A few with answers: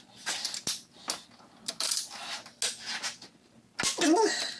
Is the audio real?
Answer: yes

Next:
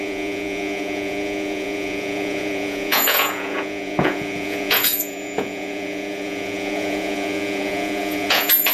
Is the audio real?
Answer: no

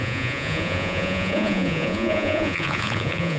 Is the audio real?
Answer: no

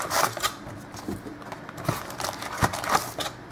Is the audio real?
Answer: yes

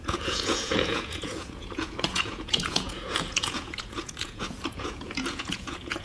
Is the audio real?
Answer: no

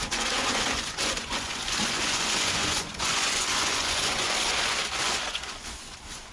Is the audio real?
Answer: no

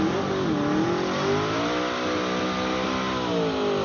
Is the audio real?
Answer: yes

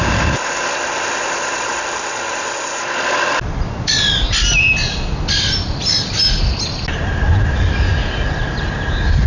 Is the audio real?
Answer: yes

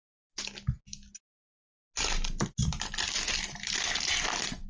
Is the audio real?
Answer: yes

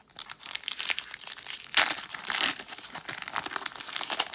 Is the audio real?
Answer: yes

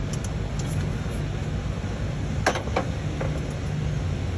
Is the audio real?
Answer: yes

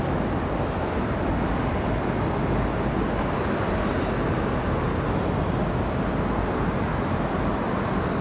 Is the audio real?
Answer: yes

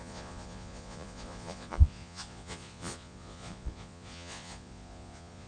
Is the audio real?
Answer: no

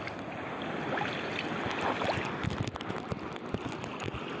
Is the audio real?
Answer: yes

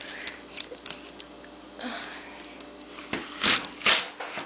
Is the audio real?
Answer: yes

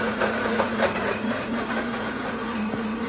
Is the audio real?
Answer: no